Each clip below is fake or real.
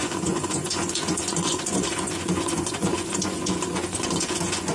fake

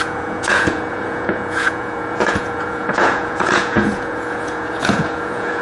fake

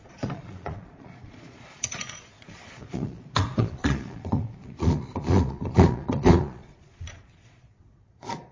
fake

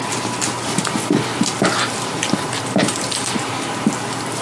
real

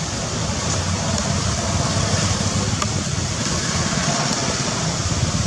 real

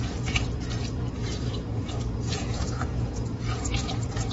fake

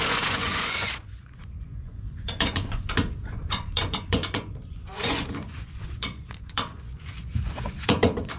fake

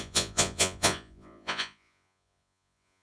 fake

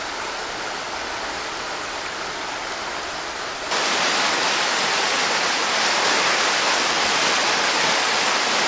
real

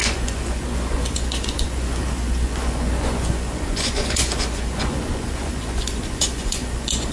fake